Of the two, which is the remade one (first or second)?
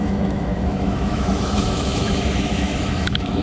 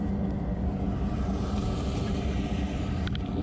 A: first